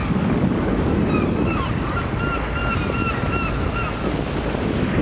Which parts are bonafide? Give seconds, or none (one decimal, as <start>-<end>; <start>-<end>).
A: 0.9-5.0

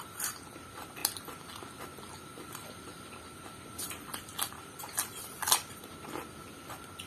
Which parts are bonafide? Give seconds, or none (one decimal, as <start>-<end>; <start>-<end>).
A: 1.0-2.1

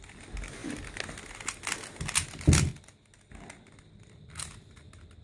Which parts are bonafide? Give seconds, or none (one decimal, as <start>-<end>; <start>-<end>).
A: 0.0-5.2

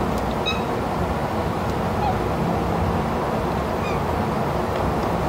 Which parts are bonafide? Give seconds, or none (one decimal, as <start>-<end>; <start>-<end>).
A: 0.0-5.3

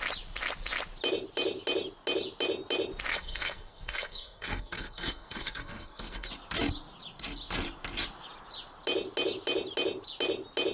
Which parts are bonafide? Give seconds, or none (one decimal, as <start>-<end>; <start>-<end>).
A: 0.0-3.1; 6.3-10.7